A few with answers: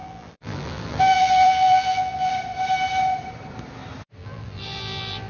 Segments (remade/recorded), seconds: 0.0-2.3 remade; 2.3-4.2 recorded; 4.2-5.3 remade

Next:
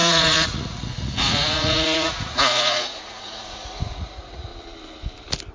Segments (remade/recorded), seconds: 0.0-4.5 remade; 4.5-5.5 recorded

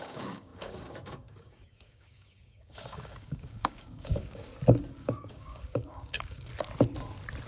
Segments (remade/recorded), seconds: 0.0-4.5 remade; 4.5-5.0 recorded; 5.0-6.5 remade; 6.5-7.5 recorded

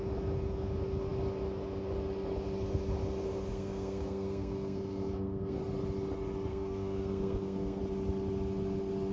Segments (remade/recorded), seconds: 0.0-3.5 recorded; 3.5-5.6 remade; 5.6-6.5 recorded; 6.5-7.8 remade; 7.8-9.1 recorded

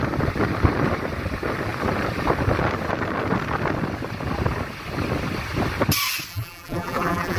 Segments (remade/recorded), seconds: 0.0-6.3 recorded; 6.3-7.4 remade